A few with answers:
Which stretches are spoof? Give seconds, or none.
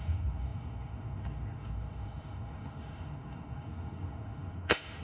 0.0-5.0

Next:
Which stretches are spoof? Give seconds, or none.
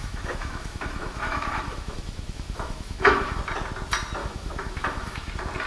0.0-3.4; 4.2-5.3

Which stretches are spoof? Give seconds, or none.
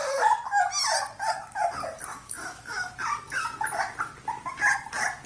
2.1-2.9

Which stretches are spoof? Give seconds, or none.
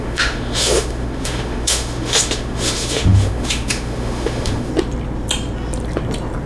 0.0-4.7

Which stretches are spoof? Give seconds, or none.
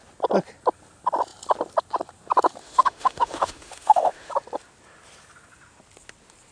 2.6-4.3